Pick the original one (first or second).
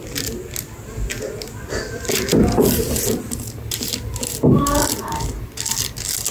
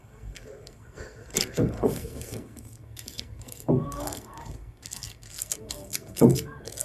first